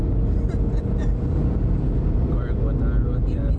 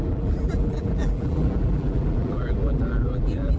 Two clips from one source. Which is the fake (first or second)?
second